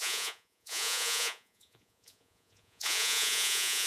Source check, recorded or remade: remade